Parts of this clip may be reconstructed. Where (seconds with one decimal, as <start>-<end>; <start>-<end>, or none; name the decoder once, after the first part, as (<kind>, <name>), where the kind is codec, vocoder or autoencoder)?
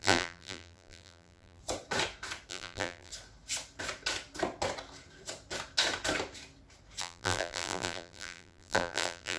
0.0-1.6 (vocoder, BigVGAN v2); 2.5-3.1; 7.0-9.4